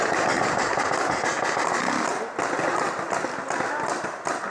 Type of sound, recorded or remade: recorded